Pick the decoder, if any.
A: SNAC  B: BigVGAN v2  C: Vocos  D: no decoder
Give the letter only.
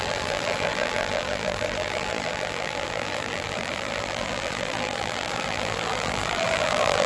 B